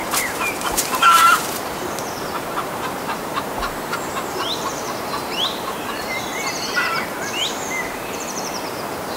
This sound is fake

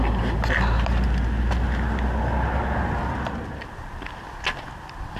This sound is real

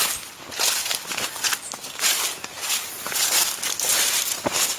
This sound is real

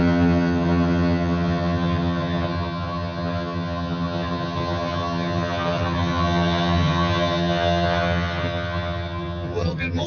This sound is fake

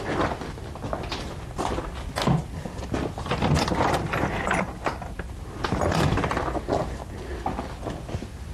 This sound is real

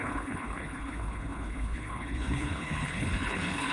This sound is fake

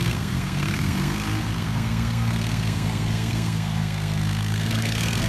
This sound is fake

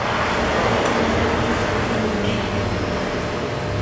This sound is real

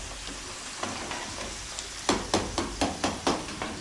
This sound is real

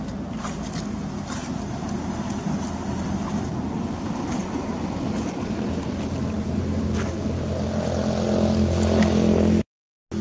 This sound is real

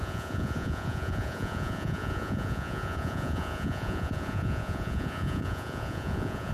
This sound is fake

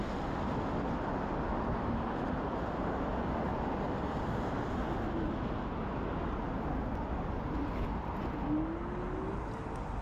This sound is real